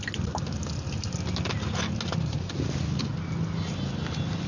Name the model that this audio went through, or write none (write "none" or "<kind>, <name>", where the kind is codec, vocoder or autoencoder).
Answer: none